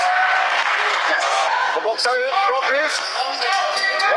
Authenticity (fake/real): fake